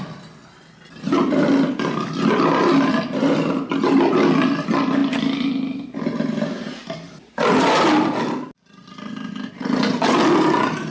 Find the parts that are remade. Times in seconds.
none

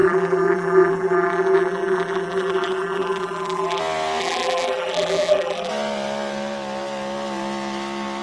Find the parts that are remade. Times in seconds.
0.0-3.8 (vocoder, BigVGAN v2); 4.2-5.7

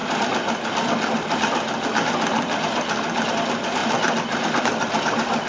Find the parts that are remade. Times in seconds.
none

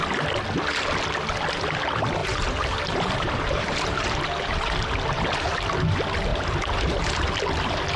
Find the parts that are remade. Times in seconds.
2.2-5.2 (vocoder, BigVGAN v2); 6.3-7.2